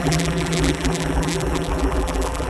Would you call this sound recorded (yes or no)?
no